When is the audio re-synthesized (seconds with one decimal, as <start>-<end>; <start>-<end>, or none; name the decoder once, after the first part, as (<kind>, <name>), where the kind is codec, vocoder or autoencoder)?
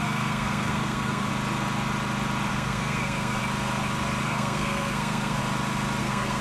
0.0-1.3 (codec, SNAC); 2.5-3.4; 4.2-5.4; 6.0-6.4